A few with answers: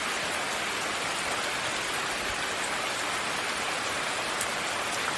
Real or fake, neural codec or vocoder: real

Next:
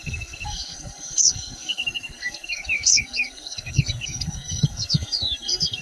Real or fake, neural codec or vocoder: fake, codec, SNAC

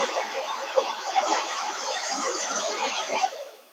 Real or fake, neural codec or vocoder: fake, autoencoder, DAC-VAE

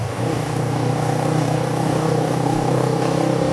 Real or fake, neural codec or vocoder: fake, codec, DAC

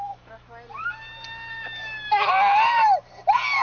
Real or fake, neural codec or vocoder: real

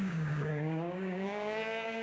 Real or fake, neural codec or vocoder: fake, codec, DAC